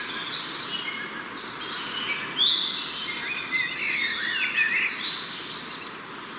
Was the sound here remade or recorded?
recorded